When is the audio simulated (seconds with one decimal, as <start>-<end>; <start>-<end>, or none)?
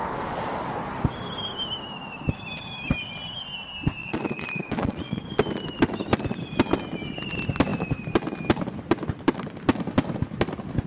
4.0-5.2